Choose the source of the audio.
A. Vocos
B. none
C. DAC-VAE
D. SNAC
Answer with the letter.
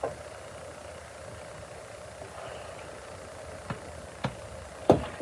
B